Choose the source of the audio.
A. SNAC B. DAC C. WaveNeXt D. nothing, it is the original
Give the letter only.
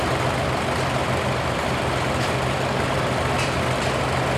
D